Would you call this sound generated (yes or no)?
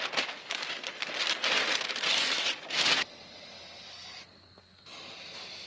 no